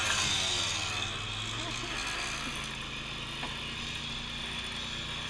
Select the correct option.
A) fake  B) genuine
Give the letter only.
B